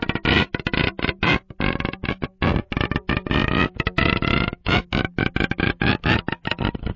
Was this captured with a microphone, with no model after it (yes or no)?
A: yes